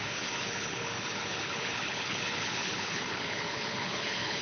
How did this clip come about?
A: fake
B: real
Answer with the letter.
A